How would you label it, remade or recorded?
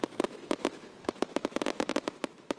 remade